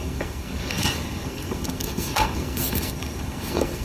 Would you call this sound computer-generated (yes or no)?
yes